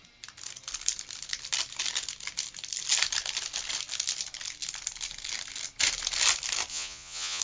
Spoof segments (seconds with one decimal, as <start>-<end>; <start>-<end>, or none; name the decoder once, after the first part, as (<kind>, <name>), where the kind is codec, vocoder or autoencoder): 6.7-7.4 (vocoder, Vocos)